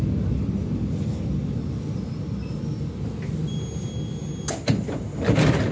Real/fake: real